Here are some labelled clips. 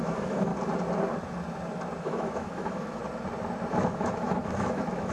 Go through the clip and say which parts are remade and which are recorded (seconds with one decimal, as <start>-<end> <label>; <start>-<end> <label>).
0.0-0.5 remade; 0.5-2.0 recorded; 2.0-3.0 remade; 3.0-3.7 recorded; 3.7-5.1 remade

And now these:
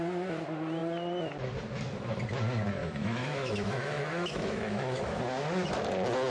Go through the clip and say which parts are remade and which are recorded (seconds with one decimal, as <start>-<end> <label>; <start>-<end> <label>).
0.0-2.8 recorded; 2.8-5.2 remade; 5.2-6.3 recorded

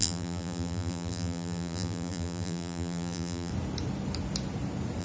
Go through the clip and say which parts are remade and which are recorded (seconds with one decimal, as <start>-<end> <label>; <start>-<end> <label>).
0.0-3.5 remade; 3.5-5.0 recorded

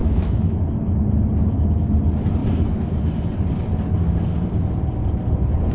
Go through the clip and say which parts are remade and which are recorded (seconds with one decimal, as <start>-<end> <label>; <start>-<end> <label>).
0.0-0.6 remade; 0.6-5.7 recorded

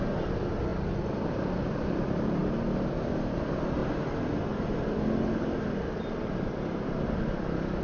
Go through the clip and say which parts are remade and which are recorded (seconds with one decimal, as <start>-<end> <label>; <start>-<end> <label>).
0.0-0.7 remade; 0.7-1.2 recorded; 1.2-2.4 remade; 2.4-3.1 recorded; 3.1-3.8 remade; 3.8-5.9 recorded; 5.9-7.8 remade